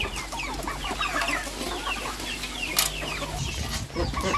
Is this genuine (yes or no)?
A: yes